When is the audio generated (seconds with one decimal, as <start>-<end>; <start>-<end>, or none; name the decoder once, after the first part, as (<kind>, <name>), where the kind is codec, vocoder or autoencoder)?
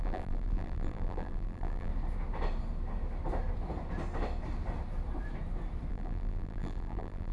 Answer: 0.0-1.9 (vocoder, BigVGAN v2); 5.9-7.3